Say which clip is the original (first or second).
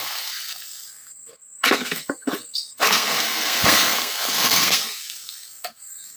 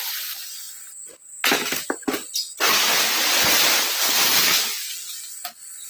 second